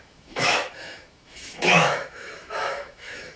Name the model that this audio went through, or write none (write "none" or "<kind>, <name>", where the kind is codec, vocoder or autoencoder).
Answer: autoencoder, DAC-VAE